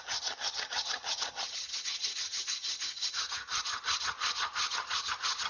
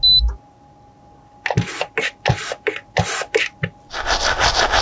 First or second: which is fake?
first